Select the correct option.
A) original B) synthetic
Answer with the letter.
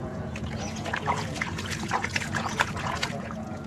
B